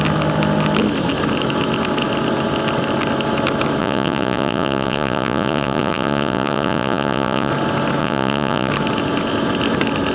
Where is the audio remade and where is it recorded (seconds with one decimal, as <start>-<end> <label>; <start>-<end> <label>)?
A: 0.0-3.8 recorded; 3.8-7.5 remade; 7.5-8.0 recorded; 8.0-8.7 remade; 8.7-10.1 recorded